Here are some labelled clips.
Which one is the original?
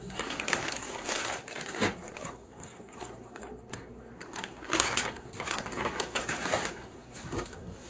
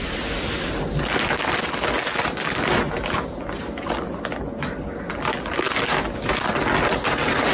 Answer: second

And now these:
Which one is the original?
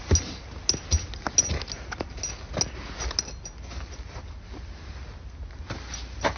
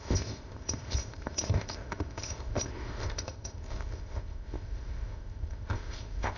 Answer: first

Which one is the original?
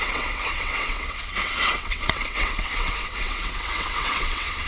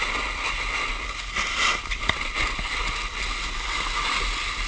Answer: second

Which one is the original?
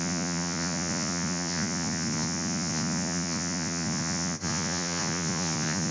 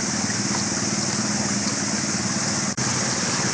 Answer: second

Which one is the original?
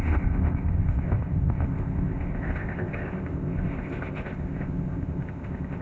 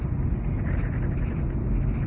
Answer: second